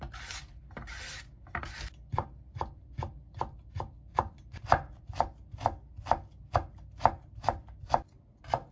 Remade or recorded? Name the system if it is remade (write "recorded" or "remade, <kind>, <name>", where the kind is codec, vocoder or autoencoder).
recorded